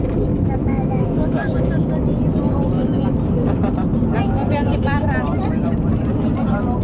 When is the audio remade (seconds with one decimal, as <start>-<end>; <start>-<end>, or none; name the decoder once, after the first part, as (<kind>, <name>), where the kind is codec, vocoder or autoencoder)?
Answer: 0.6-1.7 (autoencoder, DAC-VAE)